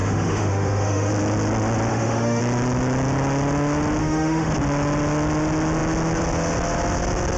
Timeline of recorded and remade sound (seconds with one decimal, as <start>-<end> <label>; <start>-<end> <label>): 0.0-1.1 remade; 1.1-1.9 recorded; 1.9-2.4 remade; 2.4-4.0 recorded; 4.0-4.5 remade; 4.5-7.4 recorded